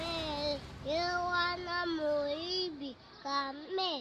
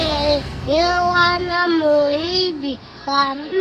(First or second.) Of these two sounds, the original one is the first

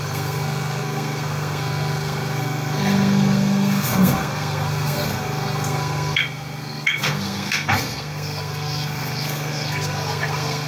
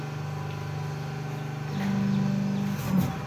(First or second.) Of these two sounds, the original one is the second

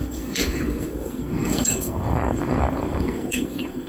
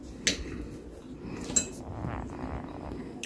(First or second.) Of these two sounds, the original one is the second